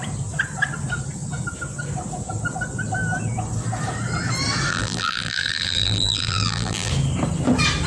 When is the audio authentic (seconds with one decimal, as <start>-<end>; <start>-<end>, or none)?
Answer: 0.0-4.7; 6.9-7.9